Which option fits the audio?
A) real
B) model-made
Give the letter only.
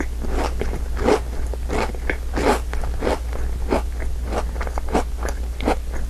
A